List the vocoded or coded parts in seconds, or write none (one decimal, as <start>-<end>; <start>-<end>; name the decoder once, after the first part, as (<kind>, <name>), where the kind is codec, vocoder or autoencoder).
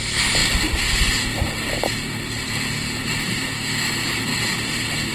0.0-0.4 (autoencoder, DAC-VAE); 3.0-4.3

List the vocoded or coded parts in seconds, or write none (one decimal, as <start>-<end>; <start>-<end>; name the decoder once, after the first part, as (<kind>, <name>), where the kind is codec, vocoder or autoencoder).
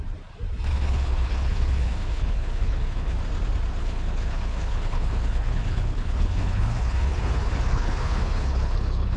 0.7-3.2 (codec, HILCodec); 3.8-9.2